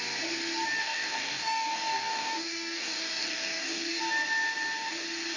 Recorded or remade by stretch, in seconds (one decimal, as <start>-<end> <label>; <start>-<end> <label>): 0.0-0.8 recorded; 0.8-4.0 remade; 4.0-5.4 recorded